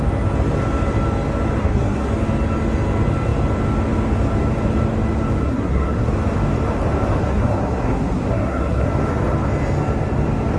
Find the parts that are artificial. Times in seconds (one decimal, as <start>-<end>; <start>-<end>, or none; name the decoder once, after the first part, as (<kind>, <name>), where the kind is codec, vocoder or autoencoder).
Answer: 1.6-2.1 (codec, SNAC); 5.4-6.1; 7.2-8.9